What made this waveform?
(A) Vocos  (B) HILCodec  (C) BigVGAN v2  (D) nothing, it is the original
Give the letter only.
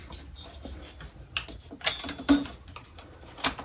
D